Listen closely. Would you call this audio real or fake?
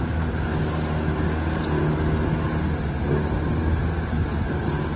real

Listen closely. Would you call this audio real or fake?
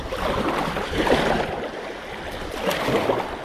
real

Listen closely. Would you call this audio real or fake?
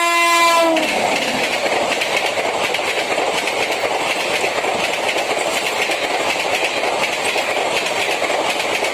real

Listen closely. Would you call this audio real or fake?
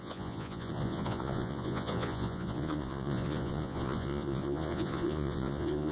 fake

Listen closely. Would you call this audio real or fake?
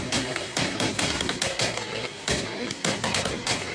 fake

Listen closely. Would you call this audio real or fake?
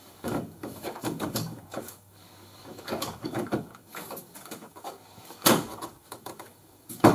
fake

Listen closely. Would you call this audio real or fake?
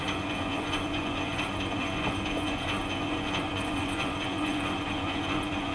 fake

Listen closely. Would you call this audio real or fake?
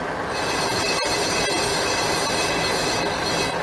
real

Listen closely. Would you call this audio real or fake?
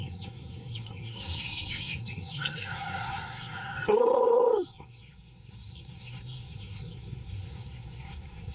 fake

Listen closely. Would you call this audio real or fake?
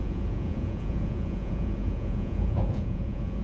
fake